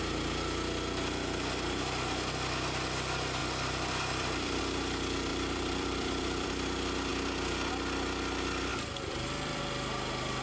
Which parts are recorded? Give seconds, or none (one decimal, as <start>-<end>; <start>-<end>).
0.0-3.4; 4.6-5.3; 6.5-8.7; 9.6-10.4